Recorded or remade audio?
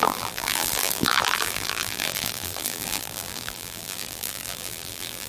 remade